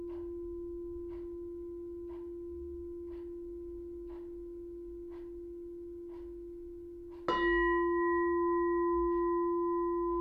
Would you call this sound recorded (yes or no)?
yes